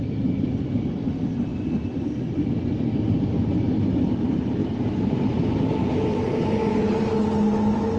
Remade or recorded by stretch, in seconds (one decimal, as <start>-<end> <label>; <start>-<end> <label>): 0.0-8.0 recorded